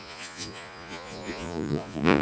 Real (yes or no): no